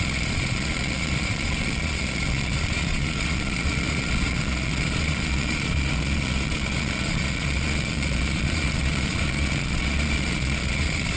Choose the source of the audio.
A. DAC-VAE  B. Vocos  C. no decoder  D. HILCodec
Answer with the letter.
B